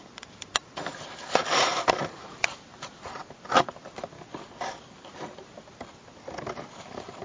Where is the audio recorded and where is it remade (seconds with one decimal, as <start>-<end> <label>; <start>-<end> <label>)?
0.0-3.2 remade; 3.2-7.2 recorded